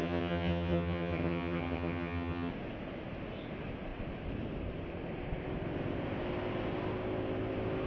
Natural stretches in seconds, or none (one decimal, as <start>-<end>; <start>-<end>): 2.5-7.9